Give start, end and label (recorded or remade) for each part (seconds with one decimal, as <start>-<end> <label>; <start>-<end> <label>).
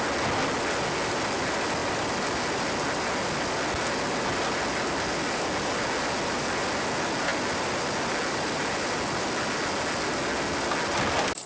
0.0-11.5 recorded